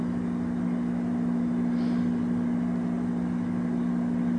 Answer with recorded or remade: recorded